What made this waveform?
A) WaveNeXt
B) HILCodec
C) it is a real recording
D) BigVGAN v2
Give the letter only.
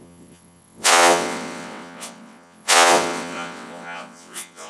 A